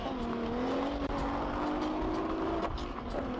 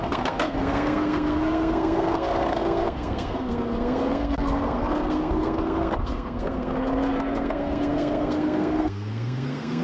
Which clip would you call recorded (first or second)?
first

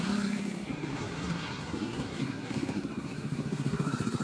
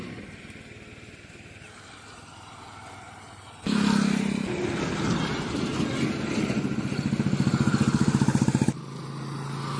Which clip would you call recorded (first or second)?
second